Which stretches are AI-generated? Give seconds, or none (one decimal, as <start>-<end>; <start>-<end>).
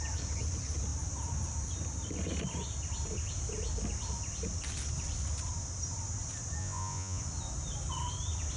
6.6-7.2